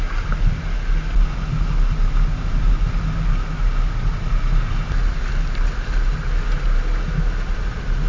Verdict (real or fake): real